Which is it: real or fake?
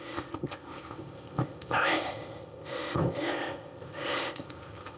fake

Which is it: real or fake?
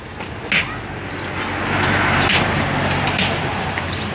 real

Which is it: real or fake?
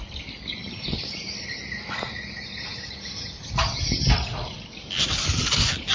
real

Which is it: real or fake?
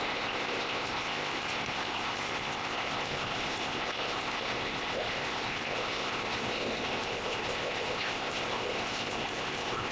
fake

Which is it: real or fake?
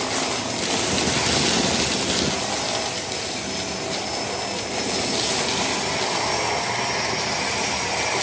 real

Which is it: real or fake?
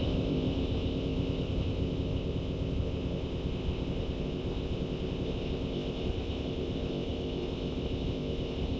fake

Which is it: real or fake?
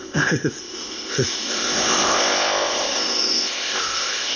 fake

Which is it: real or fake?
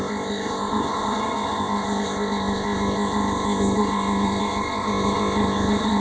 fake